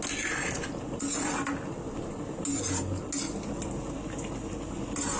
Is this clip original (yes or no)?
yes